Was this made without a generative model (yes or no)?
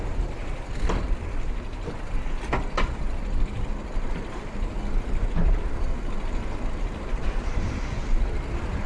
yes